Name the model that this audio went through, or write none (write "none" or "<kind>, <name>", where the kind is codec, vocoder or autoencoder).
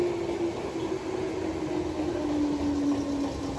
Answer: none